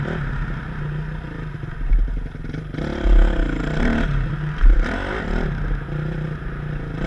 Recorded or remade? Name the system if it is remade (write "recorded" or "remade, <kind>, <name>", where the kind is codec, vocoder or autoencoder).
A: recorded